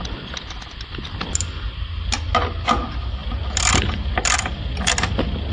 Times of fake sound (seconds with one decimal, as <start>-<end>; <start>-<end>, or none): none